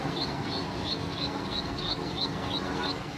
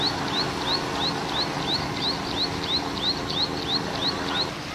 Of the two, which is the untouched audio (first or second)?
second